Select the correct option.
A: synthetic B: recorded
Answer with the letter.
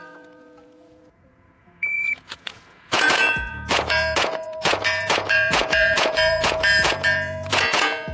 A